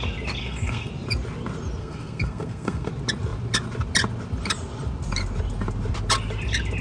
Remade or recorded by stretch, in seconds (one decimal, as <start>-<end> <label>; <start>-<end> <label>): 0.0-0.4 recorded; 0.4-0.9 remade; 0.9-1.8 recorded; 1.8-2.9 remade; 2.9-6.8 recorded